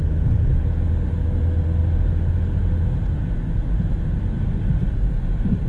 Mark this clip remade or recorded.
recorded